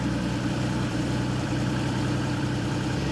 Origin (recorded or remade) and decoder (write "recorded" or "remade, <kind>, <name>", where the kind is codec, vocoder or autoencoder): remade, vocoder, BigVGAN v2